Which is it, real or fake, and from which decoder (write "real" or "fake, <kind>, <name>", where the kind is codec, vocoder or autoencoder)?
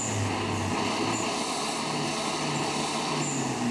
real